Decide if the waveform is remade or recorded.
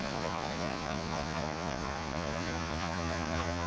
remade